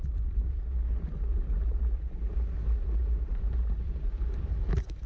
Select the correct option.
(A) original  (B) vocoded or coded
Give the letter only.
B